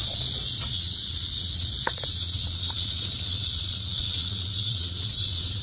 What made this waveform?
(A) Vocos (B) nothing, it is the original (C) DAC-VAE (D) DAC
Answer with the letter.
A